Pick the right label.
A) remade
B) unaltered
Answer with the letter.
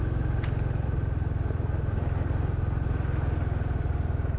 B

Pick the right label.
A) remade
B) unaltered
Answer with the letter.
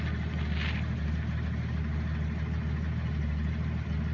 B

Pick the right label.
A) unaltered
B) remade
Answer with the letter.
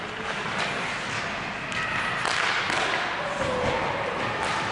A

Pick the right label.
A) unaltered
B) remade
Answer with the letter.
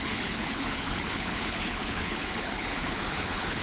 B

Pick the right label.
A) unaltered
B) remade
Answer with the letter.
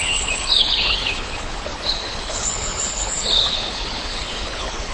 B